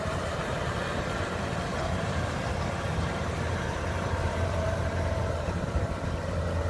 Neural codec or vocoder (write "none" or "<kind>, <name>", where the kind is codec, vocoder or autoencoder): vocoder, BigVGAN v2